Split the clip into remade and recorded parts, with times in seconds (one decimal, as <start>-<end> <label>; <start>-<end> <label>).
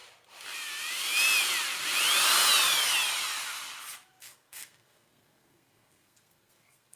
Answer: 0.0-4.2 recorded; 4.2-7.0 remade